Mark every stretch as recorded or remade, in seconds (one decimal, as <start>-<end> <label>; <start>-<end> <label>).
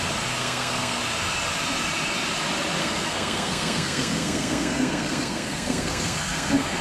0.0-0.4 recorded; 0.4-1.0 remade; 1.0-2.8 recorded; 2.8-6.8 remade